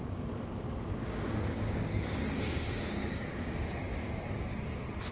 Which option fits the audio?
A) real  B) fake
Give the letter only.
B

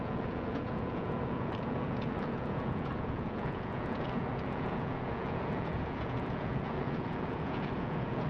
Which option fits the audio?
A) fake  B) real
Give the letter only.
A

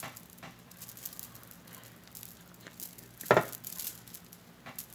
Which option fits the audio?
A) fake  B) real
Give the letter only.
B